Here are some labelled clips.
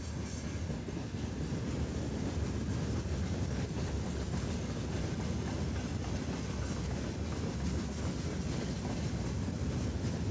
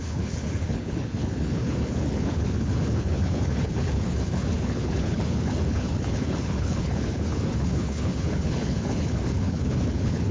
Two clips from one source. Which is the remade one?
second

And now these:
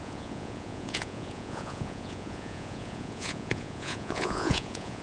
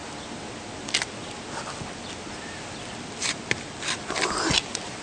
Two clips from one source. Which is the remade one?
first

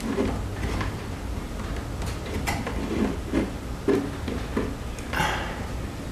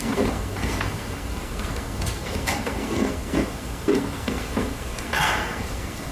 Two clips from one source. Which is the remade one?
second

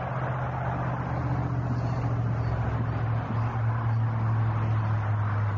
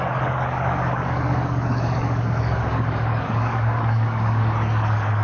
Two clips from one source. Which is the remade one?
second